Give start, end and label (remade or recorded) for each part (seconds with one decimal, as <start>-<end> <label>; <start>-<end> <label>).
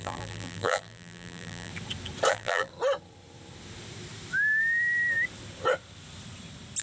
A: 0.0-1.7 remade; 1.7-2.3 recorded; 2.3-2.7 remade; 2.7-6.8 recorded